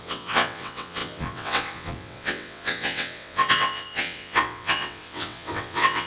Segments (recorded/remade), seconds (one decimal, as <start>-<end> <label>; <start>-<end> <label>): 0.0-6.1 remade